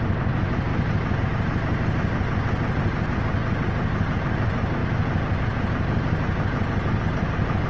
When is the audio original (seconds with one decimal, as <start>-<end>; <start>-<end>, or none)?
0.0-7.7